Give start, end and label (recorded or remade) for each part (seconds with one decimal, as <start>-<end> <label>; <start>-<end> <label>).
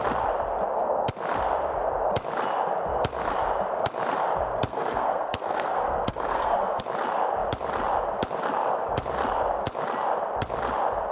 0.0-4.7 recorded; 4.7-6.8 remade; 6.8-11.1 recorded